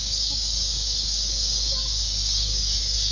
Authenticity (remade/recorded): remade